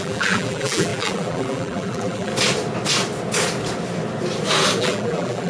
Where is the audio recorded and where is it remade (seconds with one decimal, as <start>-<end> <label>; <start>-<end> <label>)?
0.0-2.3 remade; 2.3-4.8 recorded; 4.8-5.5 remade